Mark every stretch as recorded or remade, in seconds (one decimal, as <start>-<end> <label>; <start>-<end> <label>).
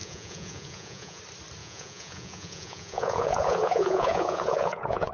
0.0-1.2 remade; 1.2-1.6 recorded; 1.6-5.1 remade